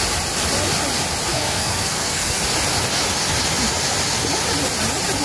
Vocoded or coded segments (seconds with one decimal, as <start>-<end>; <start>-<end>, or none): 1.3-2.4